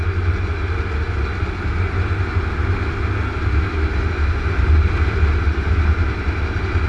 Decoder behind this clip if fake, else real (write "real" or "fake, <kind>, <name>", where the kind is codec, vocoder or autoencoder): real